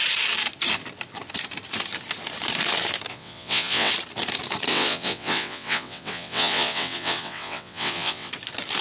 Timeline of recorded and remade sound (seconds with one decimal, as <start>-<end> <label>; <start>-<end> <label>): 0.0-3.1 recorded; 3.1-3.9 remade; 3.9-4.7 recorded; 4.7-8.3 remade; 8.3-8.8 recorded